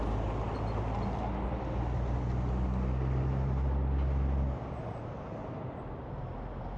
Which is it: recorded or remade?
recorded